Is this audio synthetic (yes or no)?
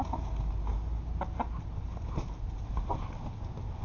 no